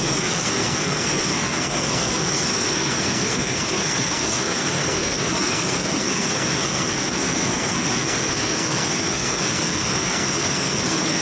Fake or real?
fake